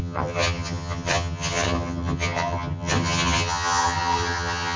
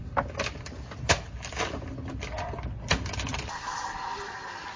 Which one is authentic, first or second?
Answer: second